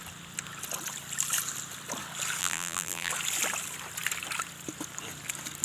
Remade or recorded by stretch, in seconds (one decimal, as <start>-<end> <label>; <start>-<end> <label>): 0.0-2.4 recorded; 2.4-3.1 remade; 3.1-5.6 recorded